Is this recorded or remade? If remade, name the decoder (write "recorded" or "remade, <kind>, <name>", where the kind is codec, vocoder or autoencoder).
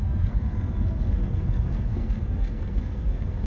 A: remade, codec, SNAC